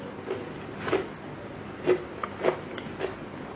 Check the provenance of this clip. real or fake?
real